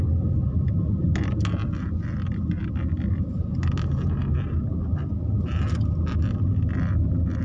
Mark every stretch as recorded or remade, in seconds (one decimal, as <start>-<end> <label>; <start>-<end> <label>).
0.0-7.4 recorded